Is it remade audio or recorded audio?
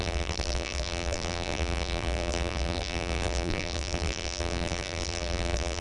remade